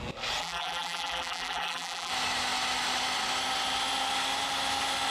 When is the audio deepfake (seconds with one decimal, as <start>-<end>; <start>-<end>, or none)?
0.4-2.1